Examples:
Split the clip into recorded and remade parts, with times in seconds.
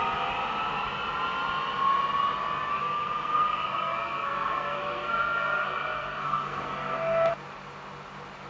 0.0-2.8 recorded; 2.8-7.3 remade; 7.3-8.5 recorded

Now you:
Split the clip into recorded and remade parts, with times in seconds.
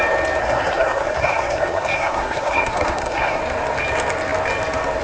0.0-0.4 recorded; 0.4-3.4 remade; 3.4-5.0 recorded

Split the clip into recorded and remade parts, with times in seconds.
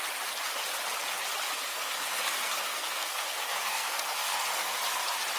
0.0-1.7 recorded; 1.7-4.8 remade; 4.8-5.4 recorded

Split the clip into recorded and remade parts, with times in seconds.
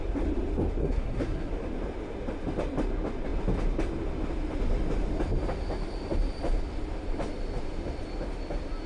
0.0-0.8 recorded; 0.8-1.5 remade; 1.5-8.9 recorded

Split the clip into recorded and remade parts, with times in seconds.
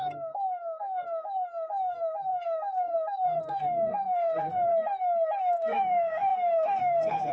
0.0-4.7 remade; 4.7-5.4 recorded; 5.4-7.3 remade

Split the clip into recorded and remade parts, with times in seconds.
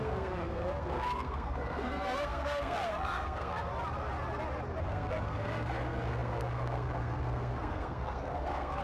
0.0-3.7 remade; 3.7-4.8 recorded; 4.8-8.8 remade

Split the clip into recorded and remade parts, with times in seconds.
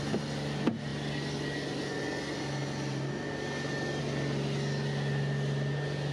0.0-6.1 recorded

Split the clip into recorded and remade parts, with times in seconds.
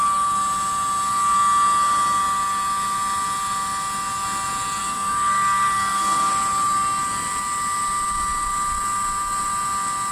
0.0-4.8 recorded; 4.8-6.3 remade; 6.3-10.1 recorded